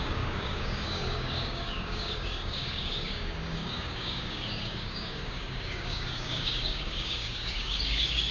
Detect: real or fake fake